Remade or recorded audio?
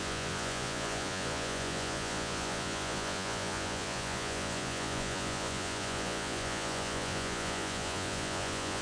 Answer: remade